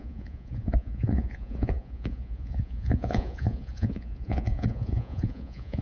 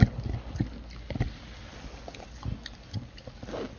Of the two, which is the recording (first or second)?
second